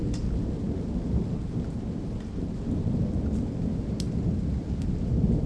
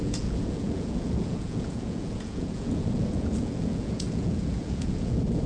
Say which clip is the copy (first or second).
second